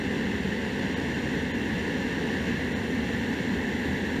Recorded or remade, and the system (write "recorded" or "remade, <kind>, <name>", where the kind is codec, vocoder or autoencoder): recorded